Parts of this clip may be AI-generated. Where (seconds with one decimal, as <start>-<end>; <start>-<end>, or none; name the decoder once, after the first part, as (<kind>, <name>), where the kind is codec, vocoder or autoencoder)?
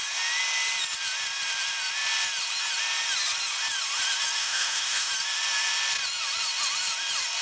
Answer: 4.4-5.1 (autoencoder, DAC-VAE)